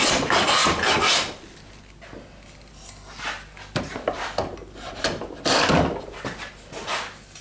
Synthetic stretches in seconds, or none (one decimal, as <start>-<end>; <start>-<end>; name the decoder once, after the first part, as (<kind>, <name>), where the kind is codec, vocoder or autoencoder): none